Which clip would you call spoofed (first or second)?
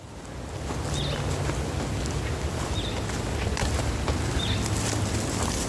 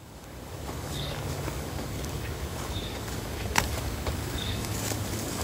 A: second